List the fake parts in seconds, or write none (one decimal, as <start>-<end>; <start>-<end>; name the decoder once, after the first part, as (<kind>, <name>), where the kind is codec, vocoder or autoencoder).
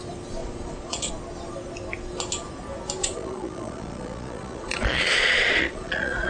0.4-1.1 (vocoder, Vocos); 3.0-6.3